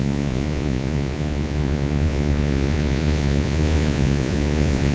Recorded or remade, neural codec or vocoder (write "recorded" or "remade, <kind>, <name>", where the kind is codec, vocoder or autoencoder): remade, vocoder, Vocos